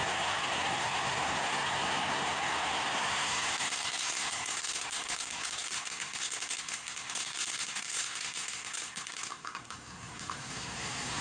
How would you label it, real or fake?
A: fake